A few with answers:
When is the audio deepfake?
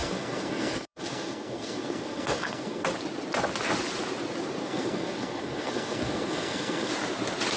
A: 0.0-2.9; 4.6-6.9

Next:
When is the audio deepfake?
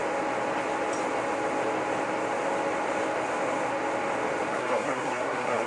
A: 4.5-5.7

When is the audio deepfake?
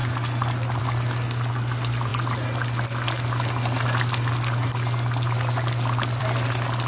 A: none